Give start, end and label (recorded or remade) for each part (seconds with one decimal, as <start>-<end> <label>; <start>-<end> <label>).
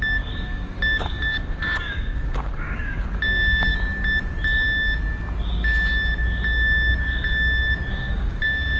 0.0-3.7 remade; 3.7-7.9 recorded; 7.9-8.8 remade